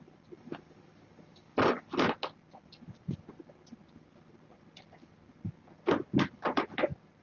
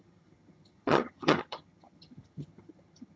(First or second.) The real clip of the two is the first